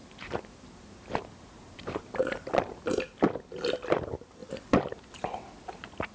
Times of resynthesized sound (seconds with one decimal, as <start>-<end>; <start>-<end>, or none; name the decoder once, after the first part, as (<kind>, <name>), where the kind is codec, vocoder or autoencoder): 0.0-2.8 (vocoder, BigVGAN v2); 4.4-5.0